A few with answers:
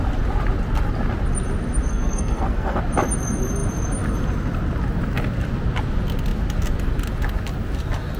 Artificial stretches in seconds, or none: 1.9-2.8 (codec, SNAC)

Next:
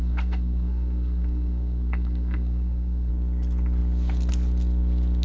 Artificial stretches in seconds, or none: 0.0-3.1 (codec, SNAC)

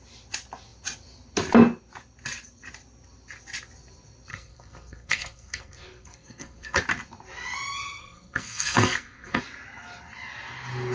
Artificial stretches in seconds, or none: 4.3-6.8 (codec, SNAC); 8.0-9.4

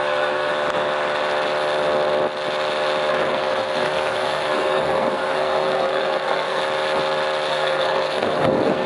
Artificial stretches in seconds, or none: 0.0-0.5 (codec, SNAC); 3.1-6.6; 7.5-8.9

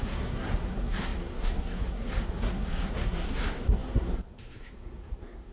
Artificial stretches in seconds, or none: 0.0-5.5 (codec, SNAC)